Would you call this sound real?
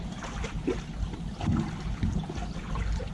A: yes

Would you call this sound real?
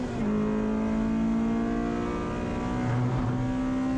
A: yes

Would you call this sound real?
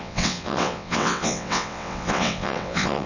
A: no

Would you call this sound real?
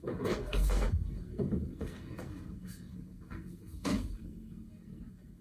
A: no